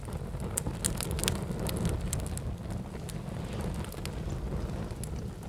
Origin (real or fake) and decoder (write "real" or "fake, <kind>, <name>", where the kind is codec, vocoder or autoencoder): real